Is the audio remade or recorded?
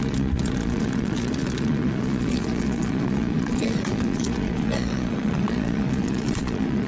remade